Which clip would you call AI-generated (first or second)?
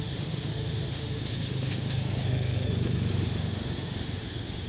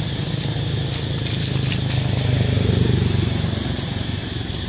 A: first